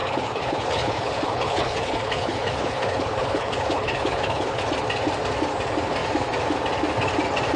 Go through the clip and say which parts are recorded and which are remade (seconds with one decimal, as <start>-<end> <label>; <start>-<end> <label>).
0.0-4.6 remade; 4.6-7.6 recorded